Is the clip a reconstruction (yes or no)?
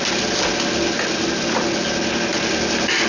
no